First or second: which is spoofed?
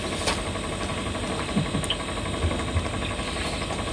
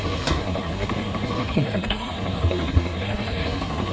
second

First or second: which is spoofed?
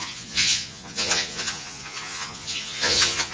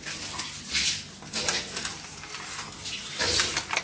first